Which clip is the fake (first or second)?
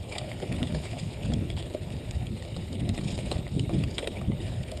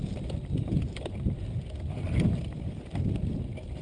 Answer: first